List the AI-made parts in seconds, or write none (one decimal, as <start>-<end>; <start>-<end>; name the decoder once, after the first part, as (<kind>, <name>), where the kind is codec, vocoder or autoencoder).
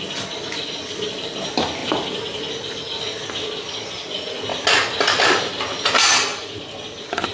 none